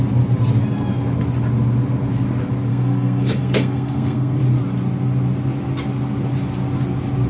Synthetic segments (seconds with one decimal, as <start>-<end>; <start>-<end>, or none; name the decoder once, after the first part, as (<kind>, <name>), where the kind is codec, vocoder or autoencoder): 2.7-4.4 (codec, SNAC)